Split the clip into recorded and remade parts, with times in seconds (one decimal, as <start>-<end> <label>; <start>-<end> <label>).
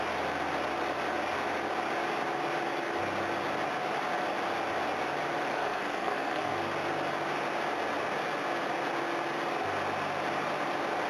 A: 0.0-5.5 recorded; 5.5-6.5 remade; 6.5-11.1 recorded